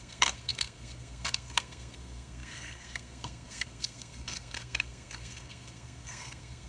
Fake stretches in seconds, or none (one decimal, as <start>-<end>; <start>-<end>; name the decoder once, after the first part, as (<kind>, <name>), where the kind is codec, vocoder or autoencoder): 0.0-6.7 (codec, SNAC)